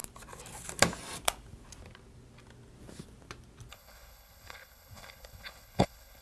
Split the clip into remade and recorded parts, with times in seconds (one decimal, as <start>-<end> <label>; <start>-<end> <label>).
0.0-3.7 recorded; 3.7-6.2 remade